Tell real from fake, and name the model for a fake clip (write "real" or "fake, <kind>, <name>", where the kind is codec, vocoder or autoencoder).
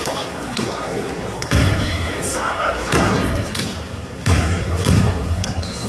fake, codec, SNAC